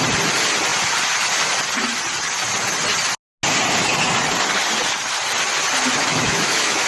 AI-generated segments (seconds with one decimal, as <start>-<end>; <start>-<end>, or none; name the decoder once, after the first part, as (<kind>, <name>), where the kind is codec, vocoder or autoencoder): 6.1-6.9 (autoencoder, DAC-VAE)